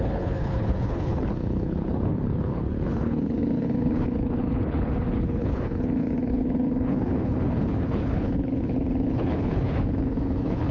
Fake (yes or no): yes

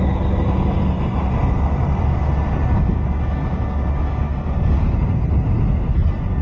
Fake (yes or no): no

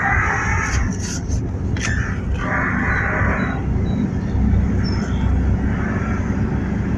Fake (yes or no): no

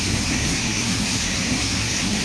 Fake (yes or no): yes